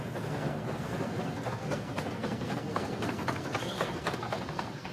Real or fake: fake